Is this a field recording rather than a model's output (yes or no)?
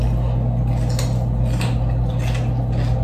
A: yes